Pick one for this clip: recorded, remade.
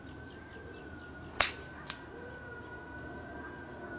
recorded